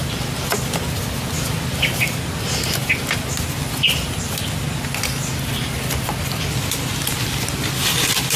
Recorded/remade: recorded